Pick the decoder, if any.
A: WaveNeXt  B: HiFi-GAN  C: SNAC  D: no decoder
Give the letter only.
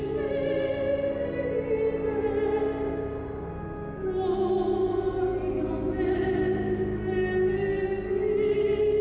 D